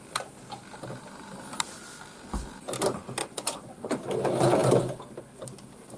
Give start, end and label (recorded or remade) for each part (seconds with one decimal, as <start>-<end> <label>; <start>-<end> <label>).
0.0-3.2 recorded; 3.2-3.7 remade; 3.7-6.0 recorded